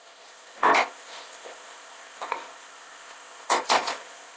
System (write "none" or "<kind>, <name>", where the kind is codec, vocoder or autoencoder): codec, ZipCodec